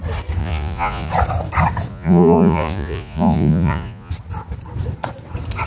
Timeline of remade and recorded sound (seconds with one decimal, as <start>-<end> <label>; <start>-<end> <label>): 0.0-0.4 recorded; 0.4-1.1 remade; 1.1-1.9 recorded; 1.9-4.1 remade; 4.1-5.7 recorded